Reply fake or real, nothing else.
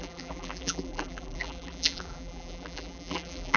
fake